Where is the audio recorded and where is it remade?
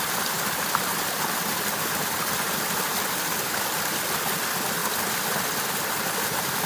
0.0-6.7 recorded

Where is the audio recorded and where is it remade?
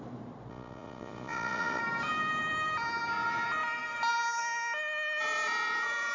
0.0-0.5 recorded; 0.5-1.8 remade; 1.8-6.1 recorded